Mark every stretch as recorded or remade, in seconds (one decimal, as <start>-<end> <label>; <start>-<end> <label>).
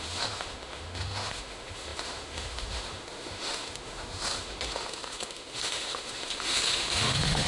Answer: 0.0-7.5 remade